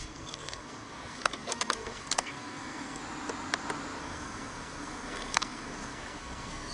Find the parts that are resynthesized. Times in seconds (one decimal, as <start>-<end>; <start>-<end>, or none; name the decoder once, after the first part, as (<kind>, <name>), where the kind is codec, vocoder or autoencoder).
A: 0.0-3.0 (codec, SNAC); 4.0-6.7

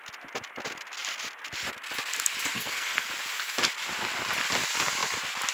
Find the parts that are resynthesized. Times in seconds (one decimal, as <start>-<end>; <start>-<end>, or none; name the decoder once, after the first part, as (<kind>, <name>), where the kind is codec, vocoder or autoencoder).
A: 2.5-3.1 (codec, SNAC)

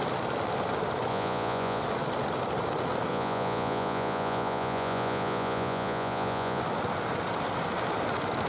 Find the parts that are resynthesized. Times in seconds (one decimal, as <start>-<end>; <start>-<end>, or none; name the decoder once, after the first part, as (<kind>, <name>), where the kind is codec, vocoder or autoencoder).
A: 1.1-1.8 (vocoder, Vocos); 3.1-6.6

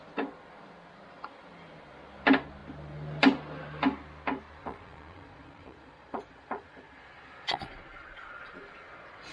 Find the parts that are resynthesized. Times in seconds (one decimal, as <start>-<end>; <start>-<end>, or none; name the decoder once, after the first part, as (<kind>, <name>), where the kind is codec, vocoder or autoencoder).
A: 4.6-9.3 (vocoder, Vocos)